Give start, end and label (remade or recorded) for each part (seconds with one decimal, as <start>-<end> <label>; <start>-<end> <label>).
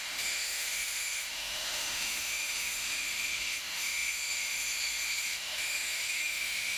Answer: 0.0-6.8 remade